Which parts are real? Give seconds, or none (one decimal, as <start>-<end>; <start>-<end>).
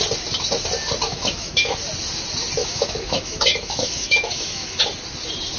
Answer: 0.0-1.1; 1.8-2.6; 4.8-5.6